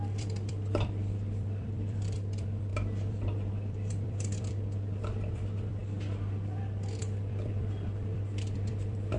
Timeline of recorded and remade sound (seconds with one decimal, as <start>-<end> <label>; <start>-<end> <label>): 0.0-5.8 remade; 5.8-7.0 recorded; 7.0-9.2 remade